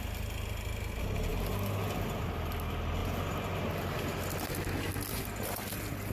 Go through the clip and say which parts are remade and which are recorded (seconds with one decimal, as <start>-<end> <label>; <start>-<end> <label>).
0.0-6.1 recorded